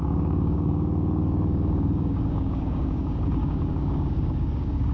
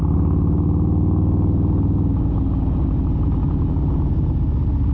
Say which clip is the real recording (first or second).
second